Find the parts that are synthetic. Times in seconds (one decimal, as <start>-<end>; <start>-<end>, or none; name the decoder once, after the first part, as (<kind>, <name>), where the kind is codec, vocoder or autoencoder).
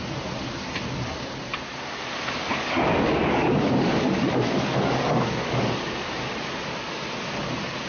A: 2.5-5.8 (codec, DAC)